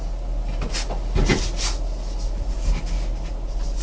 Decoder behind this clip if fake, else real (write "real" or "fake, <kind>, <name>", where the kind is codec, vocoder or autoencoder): real